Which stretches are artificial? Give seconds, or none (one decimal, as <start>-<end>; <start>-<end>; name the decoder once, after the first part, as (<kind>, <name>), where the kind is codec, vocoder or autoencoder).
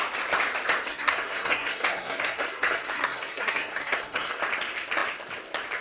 0.9-4.4 (codec, SNAC)